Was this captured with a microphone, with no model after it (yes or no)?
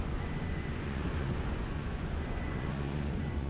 no